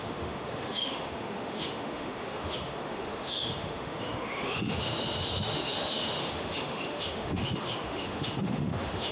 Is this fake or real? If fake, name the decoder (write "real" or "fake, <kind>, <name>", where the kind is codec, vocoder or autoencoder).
fake, autoencoder, DAC-VAE